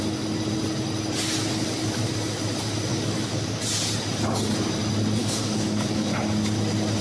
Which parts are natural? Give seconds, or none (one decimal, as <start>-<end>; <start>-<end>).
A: 0.0-2.9; 3.6-5.2; 6.1-7.0